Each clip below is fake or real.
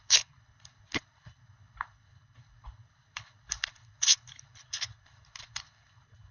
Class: fake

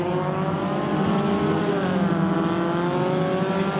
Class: real